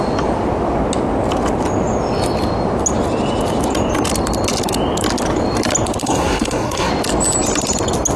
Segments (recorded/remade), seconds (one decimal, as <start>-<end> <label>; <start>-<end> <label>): 0.0-6.0 recorded; 6.0-6.9 remade; 6.9-8.2 recorded